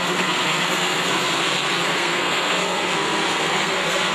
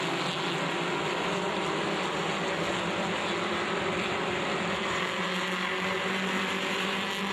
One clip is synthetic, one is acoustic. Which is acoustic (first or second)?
second